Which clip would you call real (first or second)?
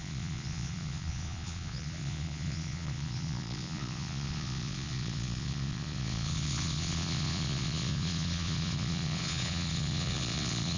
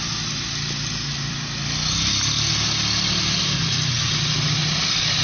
second